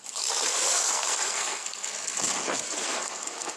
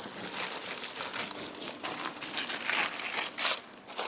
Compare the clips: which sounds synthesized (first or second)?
first